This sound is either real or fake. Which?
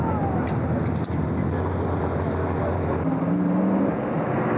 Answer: real